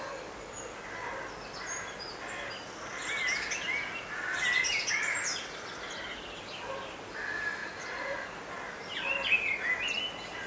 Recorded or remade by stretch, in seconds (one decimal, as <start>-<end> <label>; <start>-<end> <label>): 0.0-7.6 recorded; 7.6-8.5 remade; 8.5-10.5 recorded